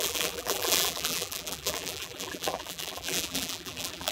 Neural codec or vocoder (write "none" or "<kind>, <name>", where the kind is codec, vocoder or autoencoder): vocoder, BigVGAN v2